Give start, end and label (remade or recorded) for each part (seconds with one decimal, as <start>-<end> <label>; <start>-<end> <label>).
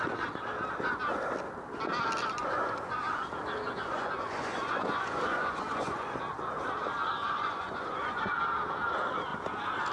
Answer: 0.0-2.4 recorded; 2.4-6.2 remade; 6.2-7.2 recorded; 7.2-8.4 remade; 8.4-9.9 recorded